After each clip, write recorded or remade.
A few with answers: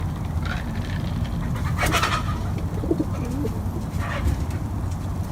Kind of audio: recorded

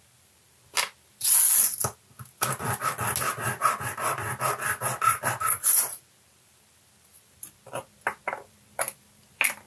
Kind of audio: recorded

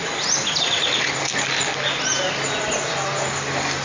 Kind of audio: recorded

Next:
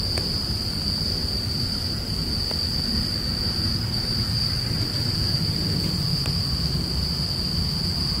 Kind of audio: recorded